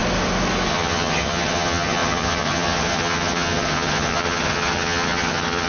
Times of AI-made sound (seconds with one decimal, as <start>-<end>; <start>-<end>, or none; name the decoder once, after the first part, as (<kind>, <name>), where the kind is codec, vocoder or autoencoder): 0.7-5.7 (vocoder, HiFi-GAN)